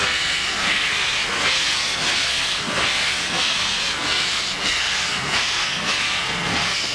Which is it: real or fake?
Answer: fake